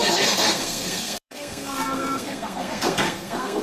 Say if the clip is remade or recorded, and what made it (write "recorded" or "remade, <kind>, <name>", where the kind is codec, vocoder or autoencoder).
remade, codec, SNAC